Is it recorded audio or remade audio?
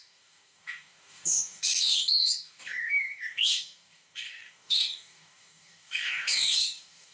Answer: remade